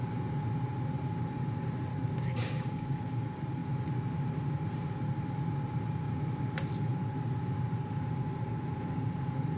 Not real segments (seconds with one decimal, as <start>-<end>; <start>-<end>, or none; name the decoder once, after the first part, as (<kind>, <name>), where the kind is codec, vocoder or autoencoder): 1.9-3.0 (codec, DAC)